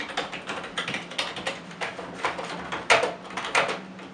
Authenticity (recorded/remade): recorded